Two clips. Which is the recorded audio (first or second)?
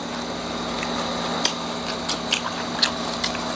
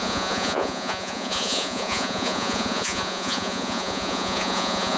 first